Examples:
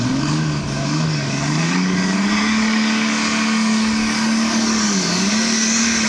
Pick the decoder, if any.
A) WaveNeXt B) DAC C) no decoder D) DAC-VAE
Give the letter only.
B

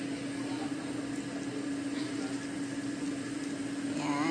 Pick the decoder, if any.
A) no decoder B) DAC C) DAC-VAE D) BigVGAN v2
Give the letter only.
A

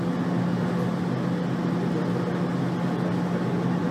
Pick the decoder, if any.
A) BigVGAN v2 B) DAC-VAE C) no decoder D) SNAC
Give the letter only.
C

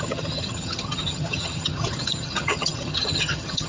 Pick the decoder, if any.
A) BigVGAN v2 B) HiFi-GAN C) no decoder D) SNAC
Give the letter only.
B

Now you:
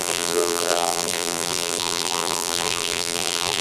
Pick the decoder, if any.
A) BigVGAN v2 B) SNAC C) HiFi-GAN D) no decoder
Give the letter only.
A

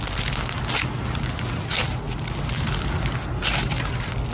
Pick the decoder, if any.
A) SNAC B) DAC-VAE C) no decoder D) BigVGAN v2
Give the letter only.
C